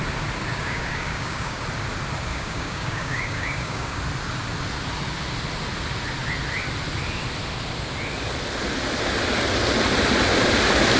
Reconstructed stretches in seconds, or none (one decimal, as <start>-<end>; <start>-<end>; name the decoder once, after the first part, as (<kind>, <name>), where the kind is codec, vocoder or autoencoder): 0.5-1.6 (codec, DAC); 2.3-4.0